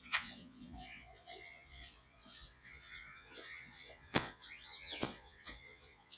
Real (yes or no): no